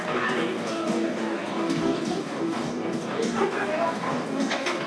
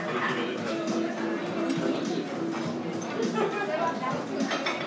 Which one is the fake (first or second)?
first